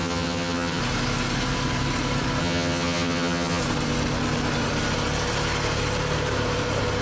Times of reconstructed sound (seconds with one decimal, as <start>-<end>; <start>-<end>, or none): 0.0-0.8; 2.4-3.6

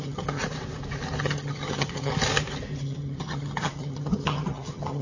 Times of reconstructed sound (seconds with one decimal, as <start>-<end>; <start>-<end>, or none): 0.0-0.4; 1.2-2.1; 2.8-5.0

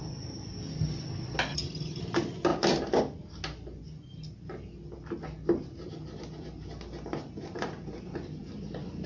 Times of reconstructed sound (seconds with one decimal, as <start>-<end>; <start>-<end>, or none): 1.5-2.0

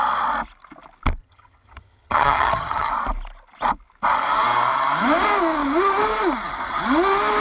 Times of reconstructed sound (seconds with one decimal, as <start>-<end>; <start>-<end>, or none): 1.2-2.9

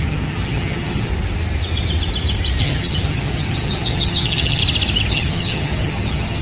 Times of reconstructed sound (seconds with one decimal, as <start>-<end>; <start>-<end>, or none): 0.0-1.1; 2.6-4.6; 5.1-6.4

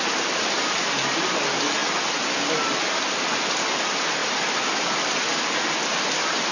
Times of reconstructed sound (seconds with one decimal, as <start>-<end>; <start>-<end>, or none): none